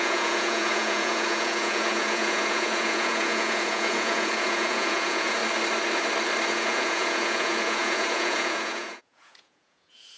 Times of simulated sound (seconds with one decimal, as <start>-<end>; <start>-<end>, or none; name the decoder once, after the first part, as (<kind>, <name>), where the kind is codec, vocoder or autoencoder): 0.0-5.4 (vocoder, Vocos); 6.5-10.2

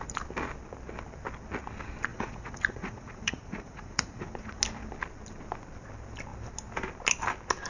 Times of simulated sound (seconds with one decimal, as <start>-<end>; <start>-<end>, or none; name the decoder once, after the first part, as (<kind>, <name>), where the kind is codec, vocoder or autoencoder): 2.1-4.6 (vocoder, Vocos)

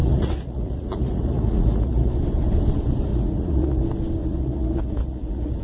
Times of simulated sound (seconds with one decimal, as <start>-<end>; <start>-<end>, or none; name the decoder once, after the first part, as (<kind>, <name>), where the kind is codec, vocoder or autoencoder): 0.0-2.1 (vocoder, Vocos); 3.1-3.8; 4.2-5.6

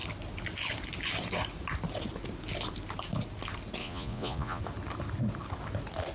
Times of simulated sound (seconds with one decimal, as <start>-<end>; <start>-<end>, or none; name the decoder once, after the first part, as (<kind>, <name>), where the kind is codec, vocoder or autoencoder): 3.8-4.6 (vocoder, Vocos)

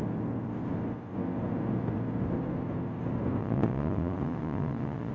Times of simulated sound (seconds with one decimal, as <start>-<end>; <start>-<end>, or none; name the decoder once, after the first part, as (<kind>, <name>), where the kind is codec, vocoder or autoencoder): 3.4-5.1 (vocoder, Vocos)